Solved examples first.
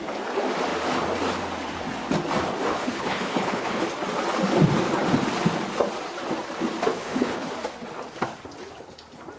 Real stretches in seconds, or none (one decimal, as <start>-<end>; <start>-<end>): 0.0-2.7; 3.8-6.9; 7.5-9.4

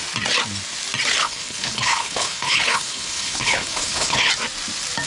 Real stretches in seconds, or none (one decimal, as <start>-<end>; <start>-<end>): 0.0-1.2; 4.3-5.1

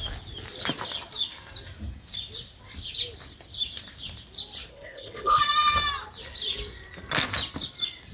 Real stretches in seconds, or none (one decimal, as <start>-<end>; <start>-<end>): 0.0-4.7; 5.4-8.1

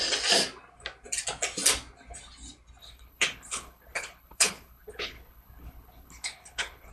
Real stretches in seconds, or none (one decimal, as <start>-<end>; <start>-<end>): 0.0-2.8

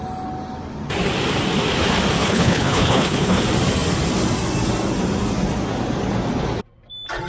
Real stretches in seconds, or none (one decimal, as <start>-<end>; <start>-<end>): 0.0-2.2; 3.4-7.3

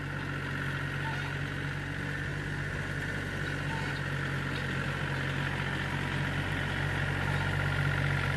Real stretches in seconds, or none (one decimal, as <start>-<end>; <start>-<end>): 0.0-8.4

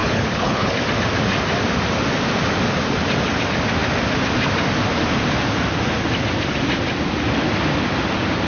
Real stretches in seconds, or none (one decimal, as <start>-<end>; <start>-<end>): 0.8-8.5

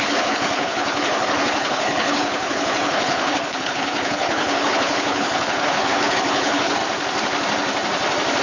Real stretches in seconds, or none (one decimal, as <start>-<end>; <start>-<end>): 6.8-8.4